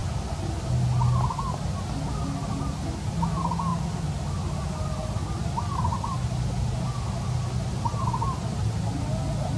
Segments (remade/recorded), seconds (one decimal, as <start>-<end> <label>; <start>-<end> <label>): 0.0-9.6 recorded